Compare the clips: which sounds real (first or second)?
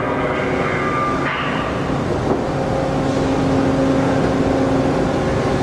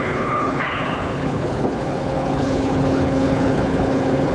first